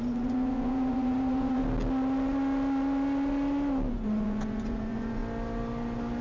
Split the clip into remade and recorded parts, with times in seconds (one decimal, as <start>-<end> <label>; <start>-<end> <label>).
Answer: 0.0-1.6 remade; 1.6-3.9 recorded; 3.9-5.2 remade; 5.2-6.2 recorded